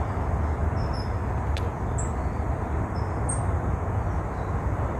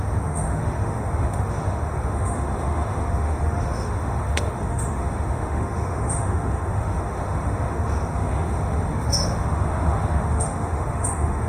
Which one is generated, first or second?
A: second